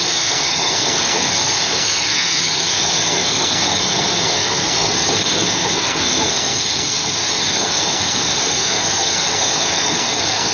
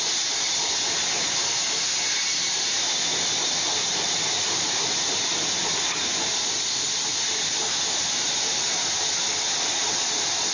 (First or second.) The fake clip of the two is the first